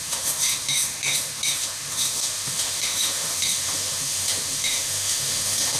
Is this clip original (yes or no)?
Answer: no